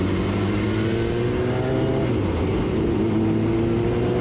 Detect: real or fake real